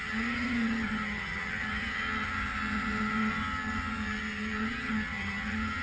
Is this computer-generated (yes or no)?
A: yes